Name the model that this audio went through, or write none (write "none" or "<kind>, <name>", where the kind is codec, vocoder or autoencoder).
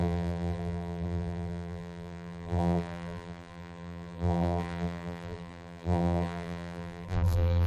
vocoder, BigVGAN v2